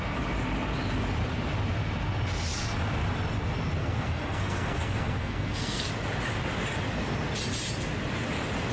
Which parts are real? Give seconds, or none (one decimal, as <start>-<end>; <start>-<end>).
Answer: 0.0-3.8; 5.9-8.7